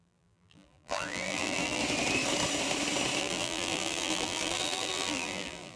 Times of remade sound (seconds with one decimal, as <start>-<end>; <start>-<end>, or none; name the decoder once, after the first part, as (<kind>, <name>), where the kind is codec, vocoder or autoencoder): 0.0-1.8 (vocoder, BigVGAN v2); 3.2-5.8

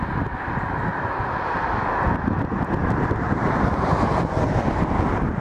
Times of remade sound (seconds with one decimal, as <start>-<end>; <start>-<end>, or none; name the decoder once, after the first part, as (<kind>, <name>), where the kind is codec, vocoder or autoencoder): 0.9-1.7 (vocoder, BigVGAN v2); 2.8-4.2